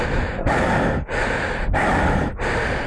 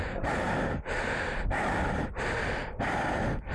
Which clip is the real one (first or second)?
first